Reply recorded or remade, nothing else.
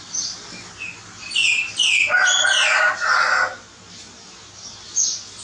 recorded